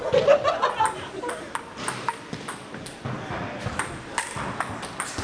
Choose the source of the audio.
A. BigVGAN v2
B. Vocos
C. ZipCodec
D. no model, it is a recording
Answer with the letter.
D